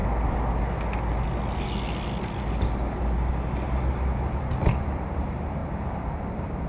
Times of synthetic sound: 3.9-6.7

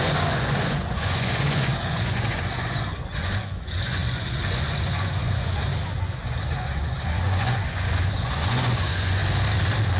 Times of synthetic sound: 0.0-9.2

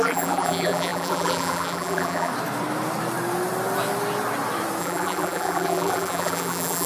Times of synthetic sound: 0.0-2.3; 4.8-6.9

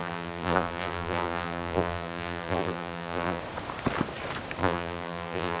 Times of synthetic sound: 0.0-3.4; 4.6-5.6

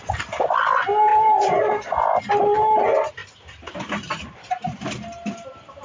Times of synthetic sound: none

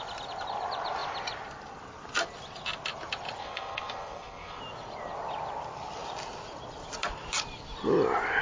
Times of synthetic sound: 3.4-4.6

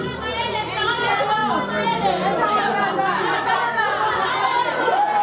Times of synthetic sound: none

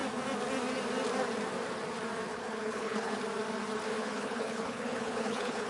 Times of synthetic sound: 2.3-3.2; 4.0-5.7